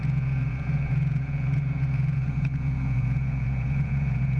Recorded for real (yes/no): no